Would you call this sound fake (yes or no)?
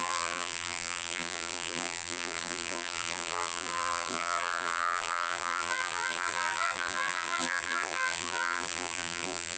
yes